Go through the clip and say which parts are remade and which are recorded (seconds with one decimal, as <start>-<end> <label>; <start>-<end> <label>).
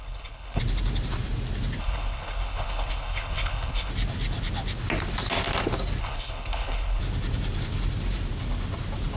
0.0-0.6 remade; 0.6-1.8 recorded; 1.8-3.9 remade; 3.9-6.0 recorded; 6.0-7.0 remade; 7.0-9.2 recorded